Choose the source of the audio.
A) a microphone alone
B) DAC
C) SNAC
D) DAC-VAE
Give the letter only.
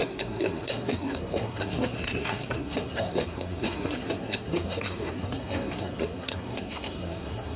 C